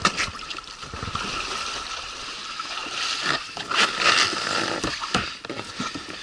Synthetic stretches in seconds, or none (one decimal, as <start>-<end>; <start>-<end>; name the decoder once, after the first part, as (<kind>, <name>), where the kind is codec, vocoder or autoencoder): none